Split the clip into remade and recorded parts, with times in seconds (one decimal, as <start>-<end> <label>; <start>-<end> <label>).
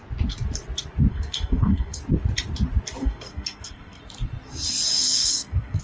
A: 0.0-1.1 recorded; 1.1-2.0 remade; 2.0-3.0 recorded; 3.0-4.0 remade; 4.0-4.9 recorded; 4.9-5.8 remade